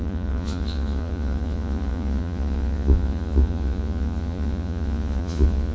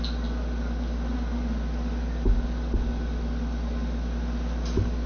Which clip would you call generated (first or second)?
first